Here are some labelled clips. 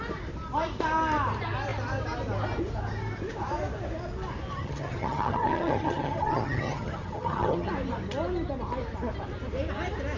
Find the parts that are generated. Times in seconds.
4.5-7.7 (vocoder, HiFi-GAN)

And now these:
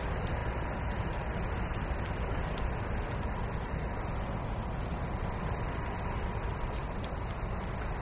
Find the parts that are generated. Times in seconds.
none

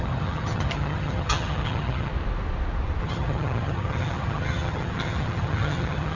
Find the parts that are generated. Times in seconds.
0.0-2.1 (vocoder, HiFi-GAN); 3.0-6.1

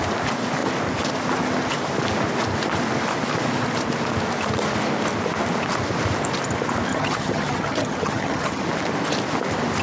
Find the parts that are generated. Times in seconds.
6.9-8.6 (vocoder, HiFi-GAN)